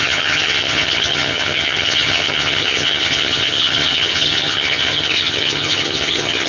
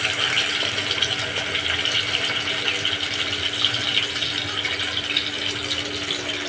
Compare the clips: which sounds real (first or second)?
second